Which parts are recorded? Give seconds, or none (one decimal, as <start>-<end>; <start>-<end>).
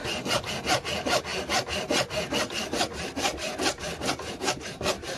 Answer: 0.5-5.2